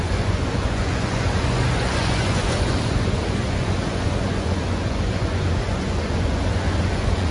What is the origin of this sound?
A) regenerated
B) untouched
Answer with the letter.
A